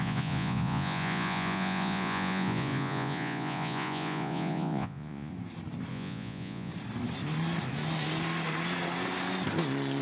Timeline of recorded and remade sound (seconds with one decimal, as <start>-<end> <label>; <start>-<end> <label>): 0.0-5.3 remade; 5.3-5.9 recorded; 5.9-6.7 remade; 6.7-10.0 recorded